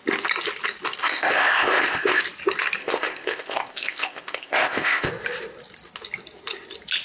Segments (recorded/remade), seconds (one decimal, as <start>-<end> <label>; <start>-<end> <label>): 0.0-1.0 recorded; 1.0-2.2 remade; 2.2-2.8 recorded; 2.8-5.1 remade; 5.1-7.0 recorded

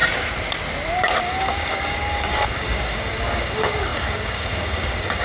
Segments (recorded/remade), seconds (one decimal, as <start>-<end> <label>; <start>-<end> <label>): 0.0-1.2 recorded; 1.2-5.2 remade